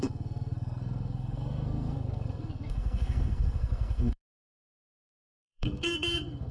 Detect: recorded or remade remade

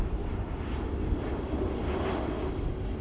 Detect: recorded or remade recorded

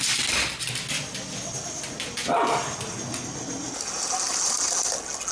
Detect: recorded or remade recorded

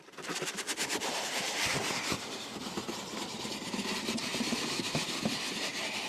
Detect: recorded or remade remade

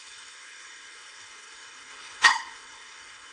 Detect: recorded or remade remade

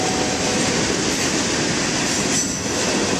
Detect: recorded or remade recorded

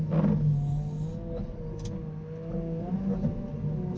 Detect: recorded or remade recorded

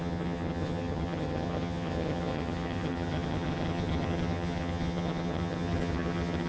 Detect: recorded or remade remade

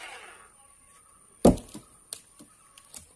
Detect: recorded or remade recorded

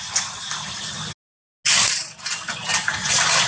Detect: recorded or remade recorded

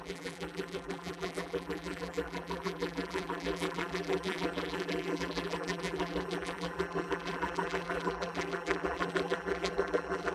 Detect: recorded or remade remade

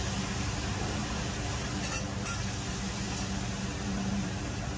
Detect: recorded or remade recorded